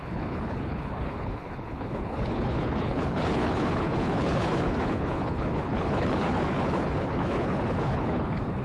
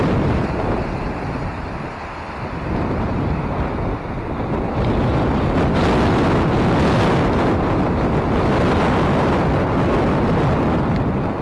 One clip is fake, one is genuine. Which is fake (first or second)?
first